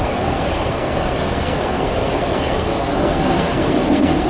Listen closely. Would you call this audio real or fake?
fake